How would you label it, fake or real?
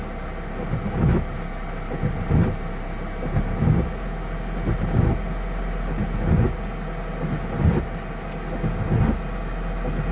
real